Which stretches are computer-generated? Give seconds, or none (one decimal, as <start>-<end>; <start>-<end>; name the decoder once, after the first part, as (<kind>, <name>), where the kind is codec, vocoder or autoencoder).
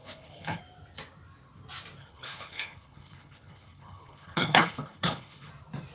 0.0-0.6 (codec, HILCodec); 2.0-5.5